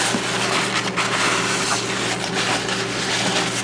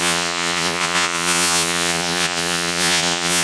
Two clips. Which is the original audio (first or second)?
first